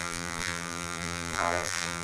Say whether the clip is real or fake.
fake